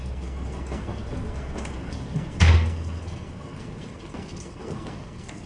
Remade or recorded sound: remade